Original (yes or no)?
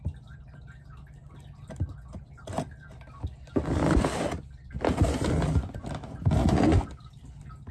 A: yes